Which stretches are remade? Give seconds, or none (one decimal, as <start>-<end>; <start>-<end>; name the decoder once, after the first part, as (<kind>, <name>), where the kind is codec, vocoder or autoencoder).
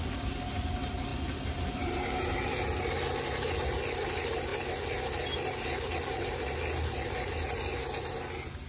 none